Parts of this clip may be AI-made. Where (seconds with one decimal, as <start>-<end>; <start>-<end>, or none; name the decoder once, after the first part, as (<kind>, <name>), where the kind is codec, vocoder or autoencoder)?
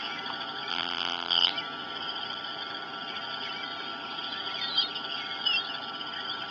0.7-1.5 (vocoder, BigVGAN v2)